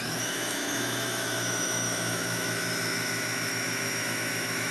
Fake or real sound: fake